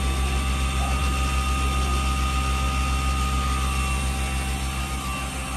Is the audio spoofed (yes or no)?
no